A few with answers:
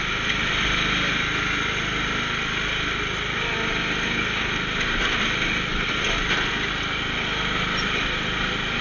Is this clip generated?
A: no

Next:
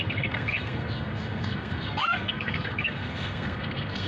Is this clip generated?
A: yes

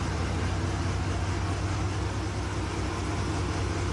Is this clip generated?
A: no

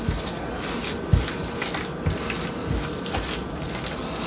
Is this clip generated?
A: no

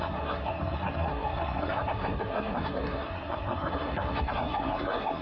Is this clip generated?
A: yes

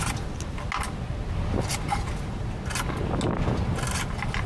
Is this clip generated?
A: no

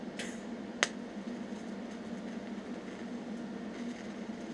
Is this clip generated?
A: no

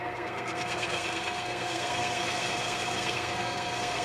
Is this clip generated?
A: yes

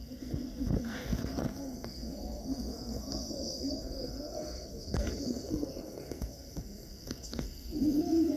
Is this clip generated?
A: yes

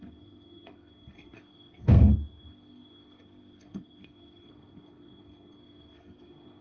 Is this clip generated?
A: yes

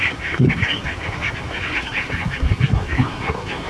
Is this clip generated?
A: yes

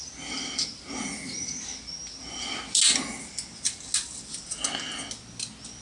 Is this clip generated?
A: no